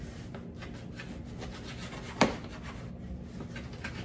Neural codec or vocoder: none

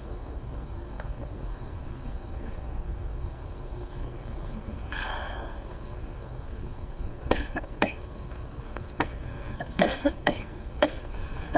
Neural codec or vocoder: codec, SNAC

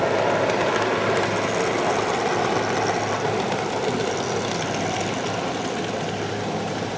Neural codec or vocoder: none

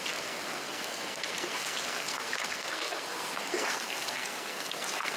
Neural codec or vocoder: codec, SNAC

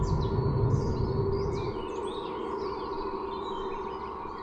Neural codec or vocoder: none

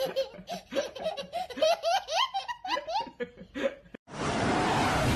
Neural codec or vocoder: vocoder, BigVGAN v2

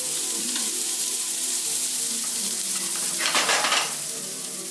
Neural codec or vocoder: vocoder, BigVGAN v2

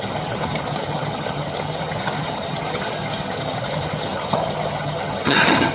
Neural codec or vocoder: vocoder, HiFi-GAN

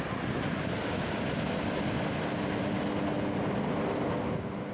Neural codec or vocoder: none